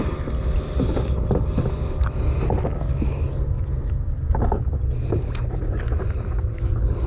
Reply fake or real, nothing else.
real